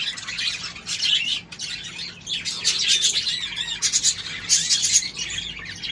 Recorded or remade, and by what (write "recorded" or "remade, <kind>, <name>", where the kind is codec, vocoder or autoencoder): recorded